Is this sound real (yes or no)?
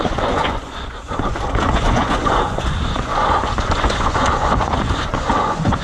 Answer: no